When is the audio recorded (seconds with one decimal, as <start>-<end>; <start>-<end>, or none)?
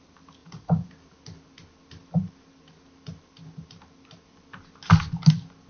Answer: 0.0-0.4; 0.9-5.7